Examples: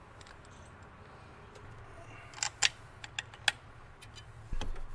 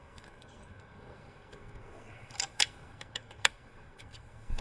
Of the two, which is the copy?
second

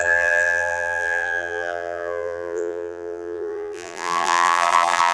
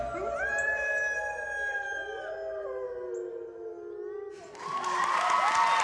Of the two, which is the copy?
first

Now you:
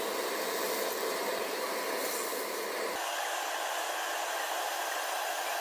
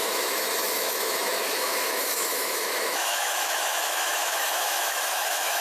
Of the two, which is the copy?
second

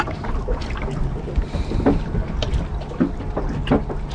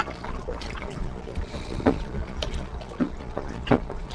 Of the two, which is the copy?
second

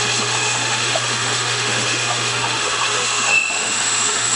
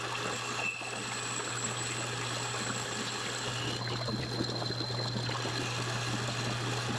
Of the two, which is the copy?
first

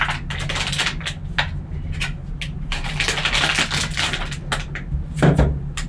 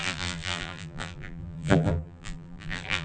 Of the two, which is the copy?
second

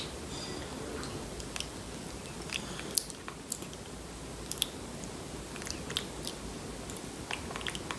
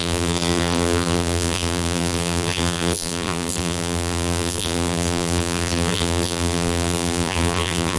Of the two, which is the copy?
second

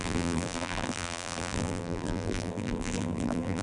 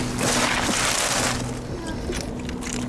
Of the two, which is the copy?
first